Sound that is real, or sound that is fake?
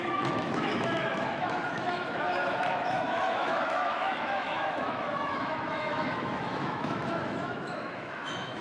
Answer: fake